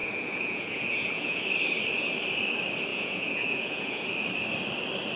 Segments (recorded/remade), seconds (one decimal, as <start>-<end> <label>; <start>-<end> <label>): 0.0-1.4 remade; 1.4-2.9 recorded; 2.9-4.1 remade; 4.1-5.2 recorded